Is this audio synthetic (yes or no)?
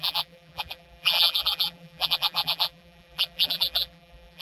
yes